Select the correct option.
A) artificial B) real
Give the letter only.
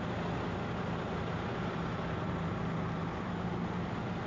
B